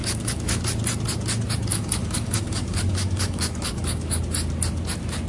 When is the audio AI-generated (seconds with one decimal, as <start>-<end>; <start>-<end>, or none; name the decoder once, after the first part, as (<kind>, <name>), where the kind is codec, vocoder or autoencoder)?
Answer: 0.0-0.6 (codec, DAC); 1.7-4.2

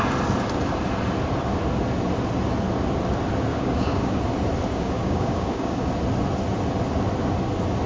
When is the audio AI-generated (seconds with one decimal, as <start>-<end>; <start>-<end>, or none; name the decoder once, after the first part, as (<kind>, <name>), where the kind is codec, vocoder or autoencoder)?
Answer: 3.5-4.2 (codec, DAC); 4.7-5.9

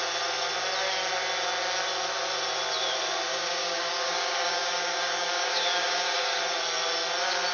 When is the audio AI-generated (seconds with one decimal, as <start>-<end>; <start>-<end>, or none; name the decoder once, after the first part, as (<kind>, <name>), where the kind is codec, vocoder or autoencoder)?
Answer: 3.3-6.4 (codec, DAC)

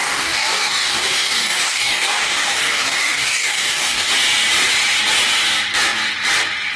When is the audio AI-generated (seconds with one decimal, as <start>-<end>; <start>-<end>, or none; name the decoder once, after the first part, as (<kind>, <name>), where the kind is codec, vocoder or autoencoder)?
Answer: 0.0-4.1 (codec, DAC)

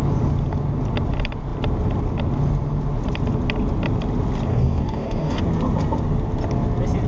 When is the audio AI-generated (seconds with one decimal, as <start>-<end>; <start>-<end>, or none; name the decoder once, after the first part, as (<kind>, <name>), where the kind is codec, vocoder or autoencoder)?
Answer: 4.5-5.4 (codec, DAC)

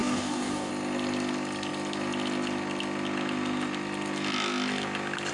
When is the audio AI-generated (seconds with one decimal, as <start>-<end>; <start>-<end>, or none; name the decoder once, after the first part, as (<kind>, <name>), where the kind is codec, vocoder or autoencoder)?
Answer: 0.0-0.7 (codec, DAC)

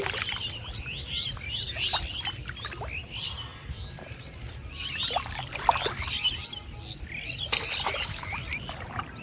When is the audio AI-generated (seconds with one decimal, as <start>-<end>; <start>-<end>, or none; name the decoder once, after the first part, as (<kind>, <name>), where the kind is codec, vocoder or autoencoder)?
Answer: none

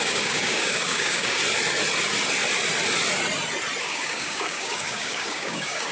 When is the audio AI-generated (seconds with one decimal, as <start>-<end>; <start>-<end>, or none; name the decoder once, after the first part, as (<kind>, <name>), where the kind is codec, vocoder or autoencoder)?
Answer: 0.0-1.4 (codec, DAC); 3.8-5.9